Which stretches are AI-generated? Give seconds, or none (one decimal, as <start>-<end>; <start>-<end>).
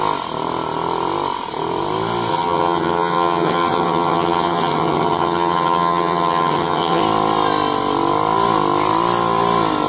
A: 2.3-7.0